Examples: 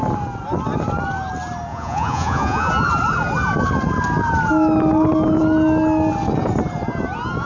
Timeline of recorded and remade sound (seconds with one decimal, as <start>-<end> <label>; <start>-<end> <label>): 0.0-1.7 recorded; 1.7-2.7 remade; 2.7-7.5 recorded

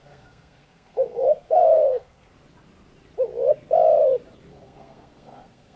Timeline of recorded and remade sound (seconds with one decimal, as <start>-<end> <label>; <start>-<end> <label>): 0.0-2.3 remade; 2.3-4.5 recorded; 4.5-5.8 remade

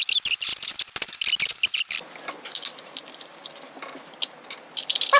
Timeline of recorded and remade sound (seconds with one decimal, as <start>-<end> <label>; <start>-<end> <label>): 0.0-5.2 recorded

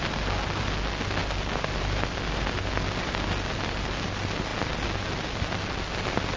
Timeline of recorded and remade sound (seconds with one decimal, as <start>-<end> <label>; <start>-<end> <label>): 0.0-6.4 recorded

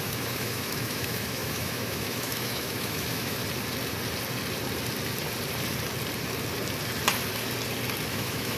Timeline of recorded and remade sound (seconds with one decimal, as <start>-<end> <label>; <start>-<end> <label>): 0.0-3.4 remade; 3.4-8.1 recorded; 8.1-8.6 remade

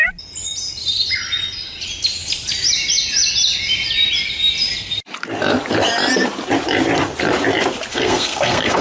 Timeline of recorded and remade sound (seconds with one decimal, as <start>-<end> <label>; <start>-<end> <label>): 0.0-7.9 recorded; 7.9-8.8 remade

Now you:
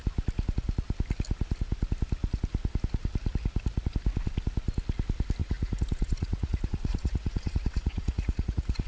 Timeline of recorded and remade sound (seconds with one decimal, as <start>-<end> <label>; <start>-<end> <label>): 0.0-5.4 recorded; 5.4-8.9 remade